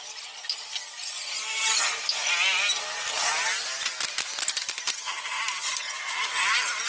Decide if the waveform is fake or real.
real